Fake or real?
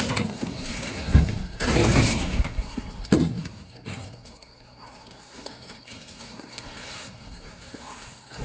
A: fake